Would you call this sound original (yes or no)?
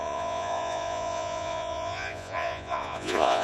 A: no